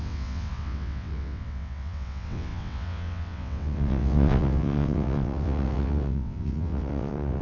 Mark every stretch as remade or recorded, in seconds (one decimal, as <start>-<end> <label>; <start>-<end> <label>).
0.0-7.4 remade